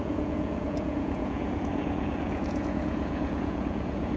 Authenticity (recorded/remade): remade